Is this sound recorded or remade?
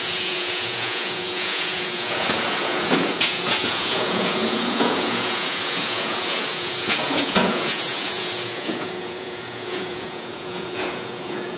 remade